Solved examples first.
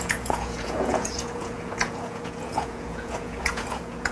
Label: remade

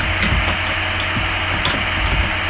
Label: recorded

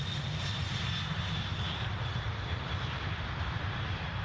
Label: recorded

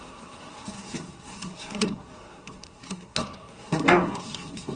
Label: remade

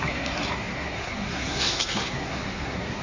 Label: remade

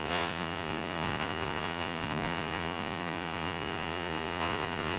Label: remade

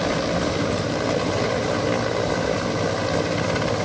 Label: recorded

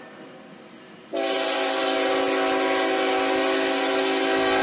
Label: recorded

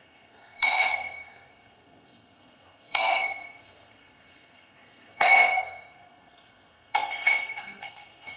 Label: remade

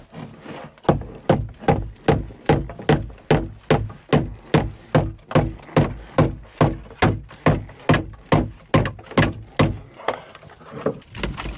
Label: recorded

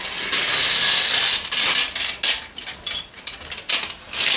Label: recorded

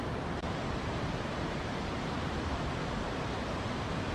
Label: remade